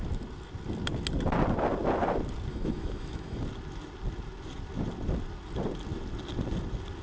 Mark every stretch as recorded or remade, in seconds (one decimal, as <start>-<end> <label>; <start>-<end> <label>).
0.0-2.5 recorded; 2.5-3.4 remade; 3.4-7.0 recorded